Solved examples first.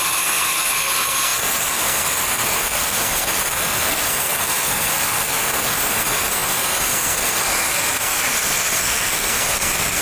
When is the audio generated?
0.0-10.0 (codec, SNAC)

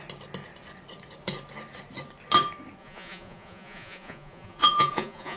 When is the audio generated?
2.8-5.4 (vocoder, Vocos)

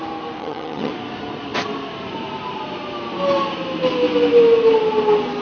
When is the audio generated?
0.4-0.9 (vocoder, HiFi-GAN)